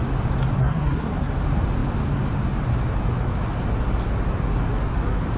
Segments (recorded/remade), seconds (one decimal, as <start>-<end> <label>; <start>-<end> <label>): 0.0-0.6 recorded; 0.6-1.3 remade; 1.3-5.4 recorded